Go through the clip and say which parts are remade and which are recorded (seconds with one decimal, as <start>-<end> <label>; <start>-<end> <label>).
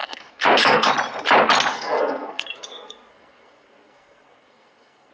0.0-0.9 remade; 0.9-1.7 recorded; 1.7-5.1 remade